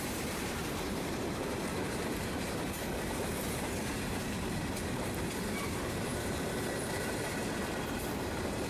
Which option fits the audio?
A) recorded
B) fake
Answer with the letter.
B